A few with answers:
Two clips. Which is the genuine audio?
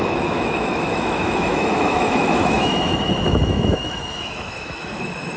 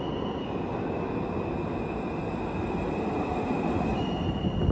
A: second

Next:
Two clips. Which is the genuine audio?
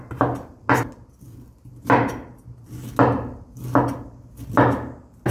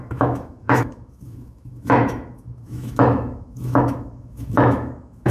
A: first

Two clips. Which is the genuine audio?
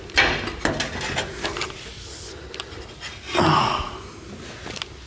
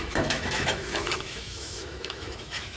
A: first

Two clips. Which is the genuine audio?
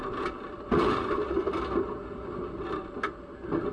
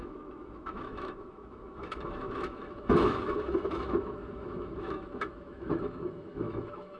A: first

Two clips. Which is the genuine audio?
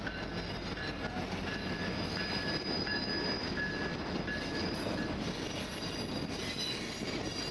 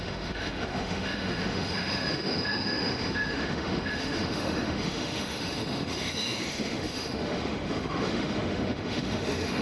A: first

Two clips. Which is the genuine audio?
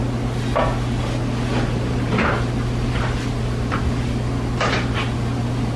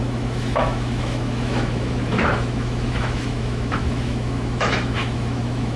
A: first